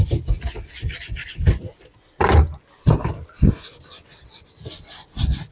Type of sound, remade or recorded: recorded